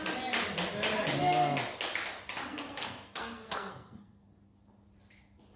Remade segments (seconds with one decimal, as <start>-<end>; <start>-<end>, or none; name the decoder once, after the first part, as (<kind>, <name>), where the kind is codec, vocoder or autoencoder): 2.5-4.2 (codec, SNAC)